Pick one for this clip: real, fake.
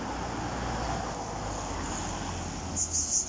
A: real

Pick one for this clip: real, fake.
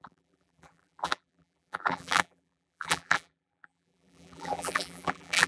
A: fake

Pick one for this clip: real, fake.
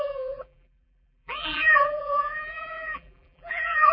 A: fake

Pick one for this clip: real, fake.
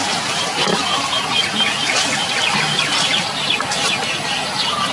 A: real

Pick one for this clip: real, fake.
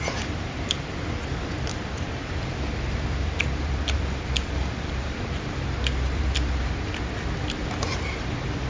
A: fake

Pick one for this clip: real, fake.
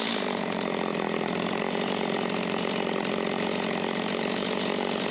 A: fake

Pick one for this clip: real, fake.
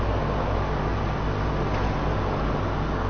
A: real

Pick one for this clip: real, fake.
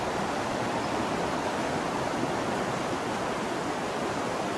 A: fake